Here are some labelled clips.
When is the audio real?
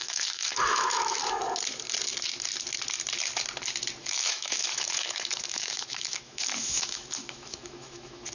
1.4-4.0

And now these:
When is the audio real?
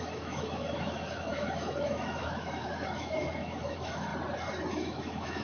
4.1-4.7